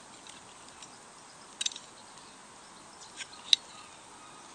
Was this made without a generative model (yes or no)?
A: yes